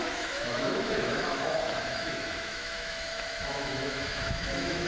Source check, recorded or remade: remade